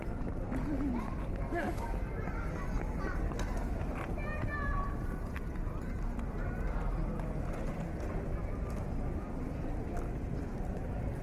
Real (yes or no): yes